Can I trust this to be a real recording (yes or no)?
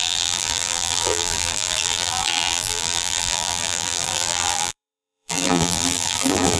no